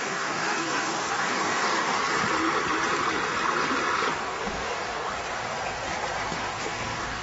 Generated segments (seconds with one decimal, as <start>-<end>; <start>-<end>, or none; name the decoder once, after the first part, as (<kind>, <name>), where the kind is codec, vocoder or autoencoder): 0.0-2.0 (codec, DAC); 4.1-5.1; 6.6-7.2